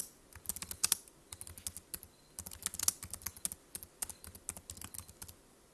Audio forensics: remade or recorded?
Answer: recorded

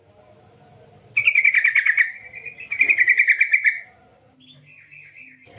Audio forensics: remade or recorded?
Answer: recorded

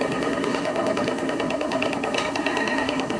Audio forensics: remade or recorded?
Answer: remade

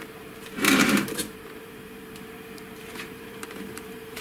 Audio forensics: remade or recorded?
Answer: remade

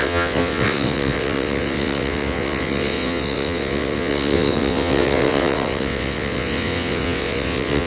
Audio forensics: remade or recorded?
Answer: remade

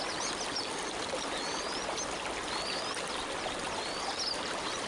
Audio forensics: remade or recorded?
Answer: recorded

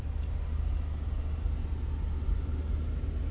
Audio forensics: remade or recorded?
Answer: recorded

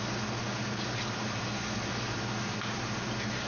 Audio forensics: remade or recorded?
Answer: recorded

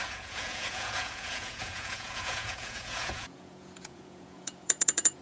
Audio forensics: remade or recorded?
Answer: remade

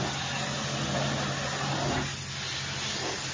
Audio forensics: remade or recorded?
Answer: recorded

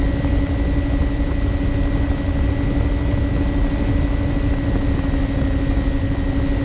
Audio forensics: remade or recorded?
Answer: recorded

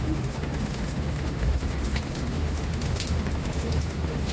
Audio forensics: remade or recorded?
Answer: remade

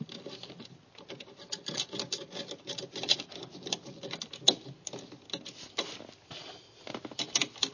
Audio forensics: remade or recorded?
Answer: recorded